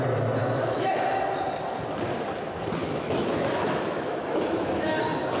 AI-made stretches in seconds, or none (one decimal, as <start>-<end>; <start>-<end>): 0.4-1.2; 2.8-5.0